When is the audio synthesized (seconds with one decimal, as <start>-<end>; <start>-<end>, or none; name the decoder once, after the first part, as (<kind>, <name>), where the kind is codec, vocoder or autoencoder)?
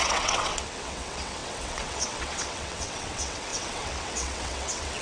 0.0-5.0 (vocoder, WaveNeXt)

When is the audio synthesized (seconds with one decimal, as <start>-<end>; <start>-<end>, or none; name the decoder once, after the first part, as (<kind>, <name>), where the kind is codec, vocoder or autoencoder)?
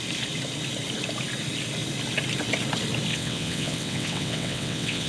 3.1-5.1 (vocoder, WaveNeXt)